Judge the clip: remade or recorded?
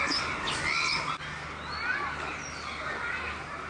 recorded